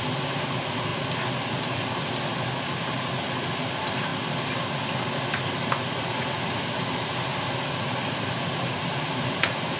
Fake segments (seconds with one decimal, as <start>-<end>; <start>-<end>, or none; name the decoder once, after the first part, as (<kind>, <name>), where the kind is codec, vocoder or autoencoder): none